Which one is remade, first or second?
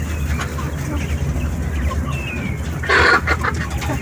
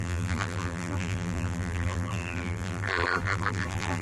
second